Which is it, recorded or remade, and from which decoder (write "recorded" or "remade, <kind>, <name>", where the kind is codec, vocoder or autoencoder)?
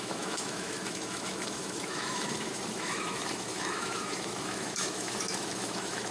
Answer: remade, autoencoder, DAC-VAE